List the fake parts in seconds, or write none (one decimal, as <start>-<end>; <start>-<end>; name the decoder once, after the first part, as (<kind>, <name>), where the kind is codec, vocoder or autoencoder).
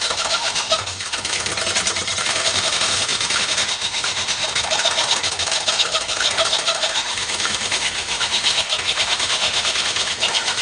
0.0-1.5 (autoencoder, DAC-VAE); 2.2-10.6